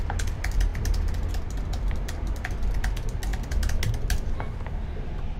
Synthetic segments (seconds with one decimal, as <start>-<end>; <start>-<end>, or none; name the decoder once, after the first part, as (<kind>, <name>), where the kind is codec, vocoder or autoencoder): none